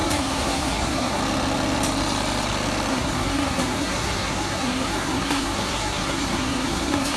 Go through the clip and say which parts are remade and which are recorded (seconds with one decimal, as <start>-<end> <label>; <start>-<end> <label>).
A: 0.0-1.2 remade; 1.2-2.9 recorded; 2.9-7.2 remade